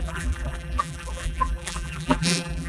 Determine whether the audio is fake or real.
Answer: fake